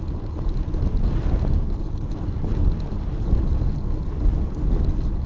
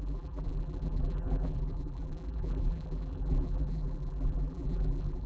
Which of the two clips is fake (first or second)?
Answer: second